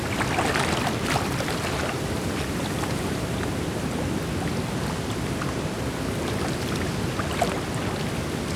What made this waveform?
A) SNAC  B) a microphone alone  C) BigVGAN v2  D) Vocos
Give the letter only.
B